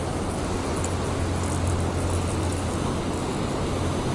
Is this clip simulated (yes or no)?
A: no